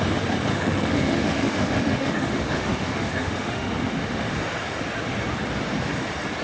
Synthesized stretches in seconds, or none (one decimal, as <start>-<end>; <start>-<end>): 0.5-4.3